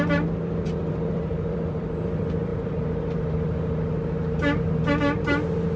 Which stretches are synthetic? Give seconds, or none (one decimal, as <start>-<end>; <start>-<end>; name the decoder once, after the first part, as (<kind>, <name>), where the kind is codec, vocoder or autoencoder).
0.0-2.5 (vocoder, BigVGAN v2)